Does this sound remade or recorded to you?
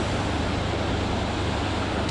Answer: recorded